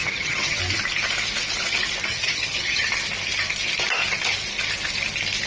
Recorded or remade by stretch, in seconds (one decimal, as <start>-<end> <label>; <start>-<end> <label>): 0.0-0.6 remade; 0.6-2.1 recorded; 2.1-2.9 remade; 2.9-5.5 recorded